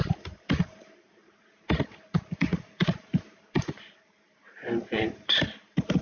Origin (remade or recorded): remade